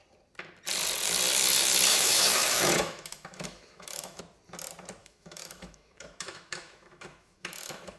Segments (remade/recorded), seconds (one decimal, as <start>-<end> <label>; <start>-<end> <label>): 0.0-1.9 recorded; 1.9-4.2 remade; 4.2-5.0 recorded; 5.0-8.0 remade

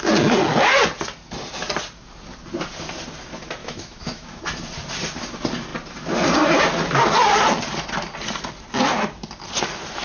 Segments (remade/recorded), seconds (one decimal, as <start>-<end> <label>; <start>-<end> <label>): 0.0-3.6 recorded; 3.6-4.4 remade; 4.4-10.0 recorded

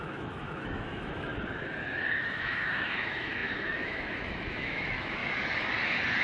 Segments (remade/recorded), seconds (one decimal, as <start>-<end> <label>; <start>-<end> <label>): 0.0-1.3 remade; 1.3-2.2 recorded; 2.2-5.2 remade; 5.2-6.2 recorded

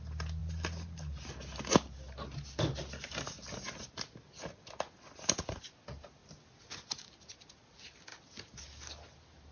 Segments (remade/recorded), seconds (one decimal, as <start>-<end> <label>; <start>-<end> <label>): 0.0-9.5 recorded